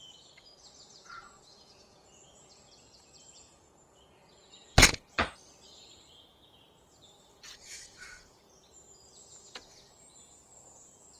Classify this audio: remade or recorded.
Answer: remade